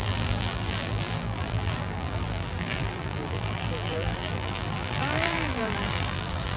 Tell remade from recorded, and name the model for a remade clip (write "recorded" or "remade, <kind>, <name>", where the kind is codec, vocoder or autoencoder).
remade, vocoder, BigVGAN v2